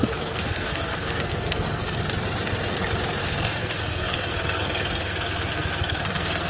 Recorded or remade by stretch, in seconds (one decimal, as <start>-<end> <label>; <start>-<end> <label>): 0.0-2.0 remade; 2.0-3.2 recorded; 3.2-6.5 remade